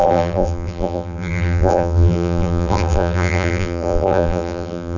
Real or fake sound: fake